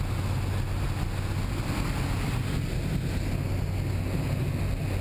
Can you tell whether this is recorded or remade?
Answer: recorded